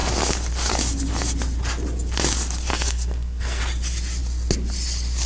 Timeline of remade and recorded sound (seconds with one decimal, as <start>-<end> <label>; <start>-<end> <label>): 0.0-2.7 recorded; 2.7-3.6 remade; 3.6-5.3 recorded